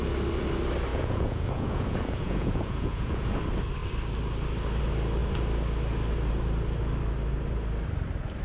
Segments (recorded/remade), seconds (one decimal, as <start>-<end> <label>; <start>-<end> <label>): 0.0-0.9 recorded; 0.9-3.4 remade; 3.4-8.4 recorded